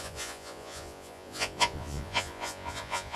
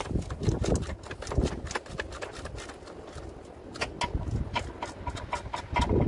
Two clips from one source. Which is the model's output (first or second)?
first